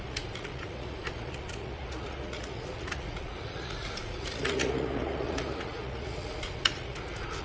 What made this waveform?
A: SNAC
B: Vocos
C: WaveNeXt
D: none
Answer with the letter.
B